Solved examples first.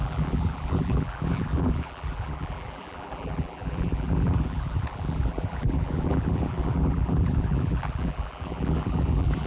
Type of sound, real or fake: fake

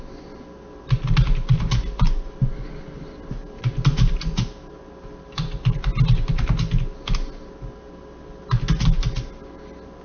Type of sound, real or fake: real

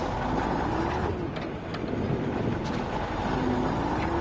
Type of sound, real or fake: real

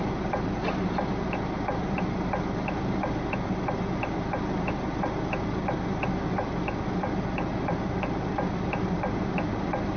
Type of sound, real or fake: real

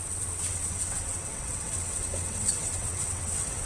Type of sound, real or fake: fake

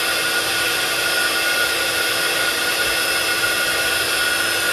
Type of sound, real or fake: real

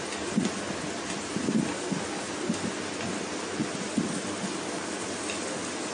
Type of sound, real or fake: real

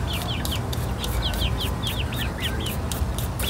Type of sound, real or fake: real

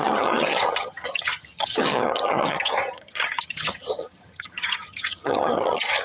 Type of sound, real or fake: fake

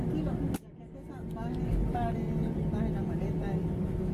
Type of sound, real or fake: real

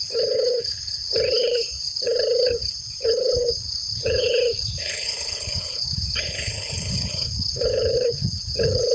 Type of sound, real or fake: fake